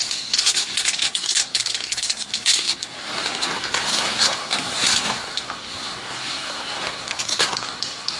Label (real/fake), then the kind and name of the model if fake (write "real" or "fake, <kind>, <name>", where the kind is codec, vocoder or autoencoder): fake, codec, SNAC